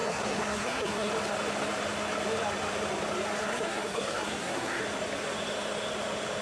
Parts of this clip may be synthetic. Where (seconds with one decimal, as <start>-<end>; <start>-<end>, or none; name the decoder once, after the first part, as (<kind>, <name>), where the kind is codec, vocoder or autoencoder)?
0.0-1.1 (codec, SNAC); 3.4-4.8